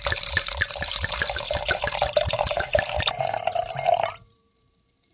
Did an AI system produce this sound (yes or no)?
yes